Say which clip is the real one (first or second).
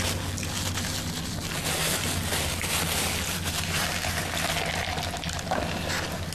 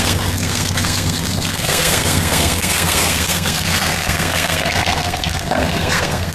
first